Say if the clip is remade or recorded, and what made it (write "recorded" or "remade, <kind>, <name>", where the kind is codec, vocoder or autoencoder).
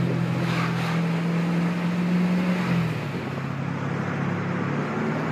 recorded